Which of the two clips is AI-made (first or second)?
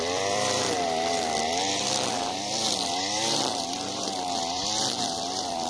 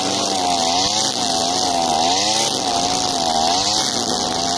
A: first